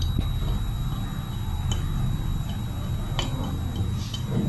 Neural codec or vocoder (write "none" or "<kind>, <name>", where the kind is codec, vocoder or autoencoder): none